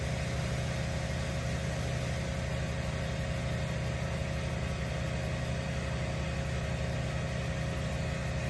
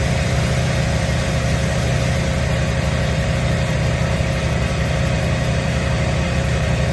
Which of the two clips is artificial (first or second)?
second